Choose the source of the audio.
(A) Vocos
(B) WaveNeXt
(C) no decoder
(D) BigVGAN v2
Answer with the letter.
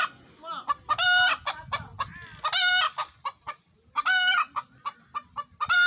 C